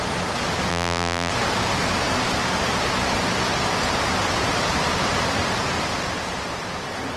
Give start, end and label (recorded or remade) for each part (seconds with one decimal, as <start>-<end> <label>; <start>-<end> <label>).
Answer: 0.0-0.7 recorded; 0.7-1.3 remade; 1.3-7.2 recorded